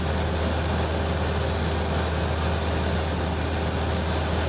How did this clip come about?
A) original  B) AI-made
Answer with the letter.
A